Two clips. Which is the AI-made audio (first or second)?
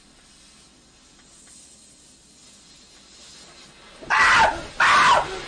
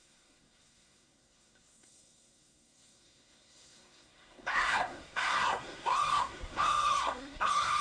second